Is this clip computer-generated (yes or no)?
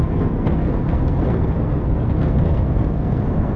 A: yes